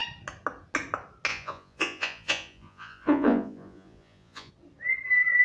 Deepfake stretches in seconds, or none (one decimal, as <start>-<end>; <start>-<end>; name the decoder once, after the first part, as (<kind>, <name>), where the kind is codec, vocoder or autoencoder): 1.3-4.5 (vocoder, Vocos)